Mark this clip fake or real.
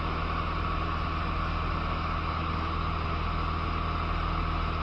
real